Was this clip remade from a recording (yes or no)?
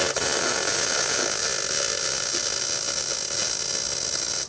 no